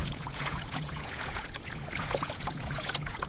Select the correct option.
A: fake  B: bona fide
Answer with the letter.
A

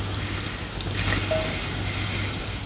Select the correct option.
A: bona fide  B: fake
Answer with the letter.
A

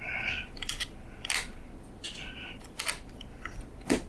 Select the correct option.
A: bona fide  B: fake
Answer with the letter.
A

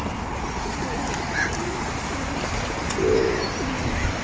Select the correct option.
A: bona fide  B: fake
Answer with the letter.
A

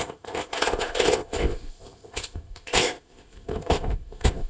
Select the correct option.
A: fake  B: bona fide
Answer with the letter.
A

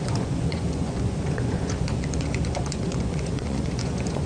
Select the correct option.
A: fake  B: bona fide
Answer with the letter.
A